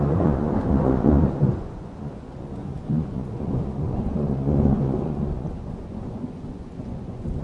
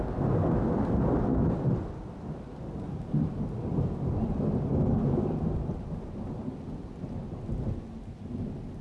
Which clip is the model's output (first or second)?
first